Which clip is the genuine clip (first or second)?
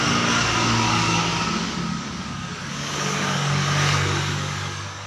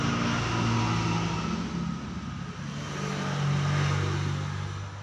second